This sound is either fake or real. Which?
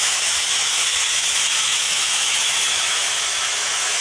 fake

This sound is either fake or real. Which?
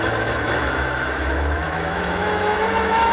fake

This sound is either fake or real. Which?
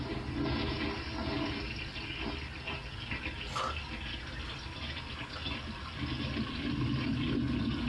real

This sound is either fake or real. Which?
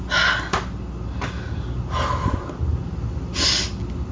real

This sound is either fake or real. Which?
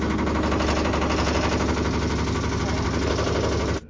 real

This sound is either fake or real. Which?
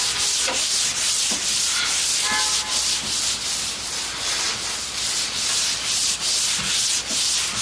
real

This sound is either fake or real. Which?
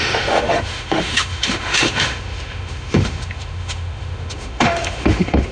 fake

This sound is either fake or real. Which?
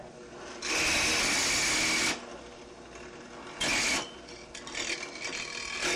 real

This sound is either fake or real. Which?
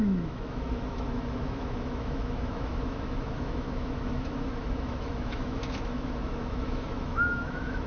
fake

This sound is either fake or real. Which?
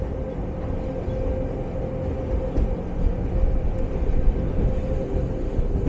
real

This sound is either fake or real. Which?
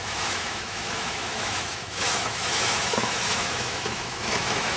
fake